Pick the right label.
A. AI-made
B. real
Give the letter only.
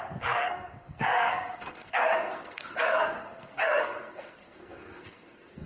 A